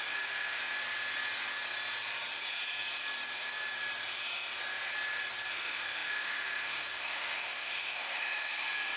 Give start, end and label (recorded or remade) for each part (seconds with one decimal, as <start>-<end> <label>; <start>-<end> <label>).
0.0-0.6 remade; 0.6-5.5 recorded; 5.5-9.0 remade